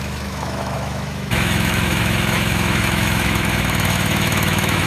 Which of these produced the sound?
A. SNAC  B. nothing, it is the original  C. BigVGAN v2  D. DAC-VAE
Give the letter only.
D